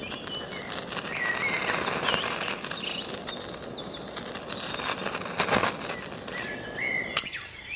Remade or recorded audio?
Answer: recorded